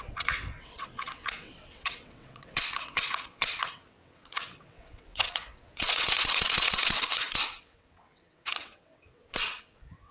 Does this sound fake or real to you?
fake